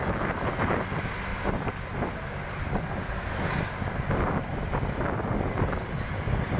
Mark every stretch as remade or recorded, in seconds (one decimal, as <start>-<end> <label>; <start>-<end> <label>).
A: 0.0-6.6 recorded